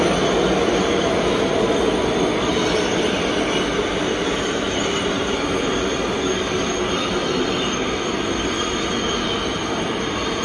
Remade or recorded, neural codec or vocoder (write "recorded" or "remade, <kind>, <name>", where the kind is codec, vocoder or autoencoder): recorded